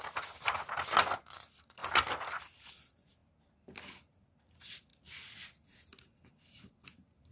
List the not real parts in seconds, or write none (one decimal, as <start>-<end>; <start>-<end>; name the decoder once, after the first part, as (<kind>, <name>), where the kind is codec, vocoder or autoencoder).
none